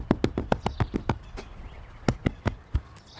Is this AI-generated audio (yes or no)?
no